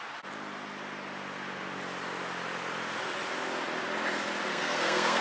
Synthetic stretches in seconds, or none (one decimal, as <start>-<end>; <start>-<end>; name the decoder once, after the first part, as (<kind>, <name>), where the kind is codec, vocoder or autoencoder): 4.5-5.2 (codec, SNAC)